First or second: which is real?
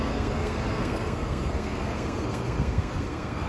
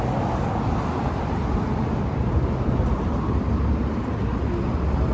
second